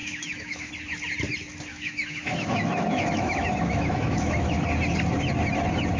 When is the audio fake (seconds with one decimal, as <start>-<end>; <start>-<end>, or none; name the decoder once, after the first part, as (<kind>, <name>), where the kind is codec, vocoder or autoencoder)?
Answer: 0.0-0.7 (autoencoder, DAC-VAE); 1.7-4.6